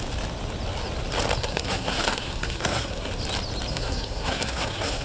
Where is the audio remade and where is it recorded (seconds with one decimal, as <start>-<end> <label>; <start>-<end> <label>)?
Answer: 0.0-1.4 recorded; 1.4-3.1 remade; 3.1-3.7 recorded; 3.7-5.0 remade